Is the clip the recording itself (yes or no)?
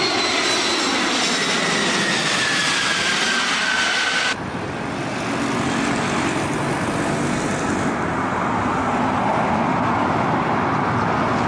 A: yes